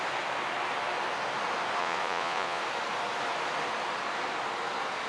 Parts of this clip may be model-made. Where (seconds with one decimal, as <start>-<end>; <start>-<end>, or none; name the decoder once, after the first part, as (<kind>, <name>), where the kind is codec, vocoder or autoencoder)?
1.8-2.6 (vocoder, Vocos)